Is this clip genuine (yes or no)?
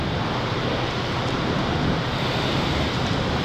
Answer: no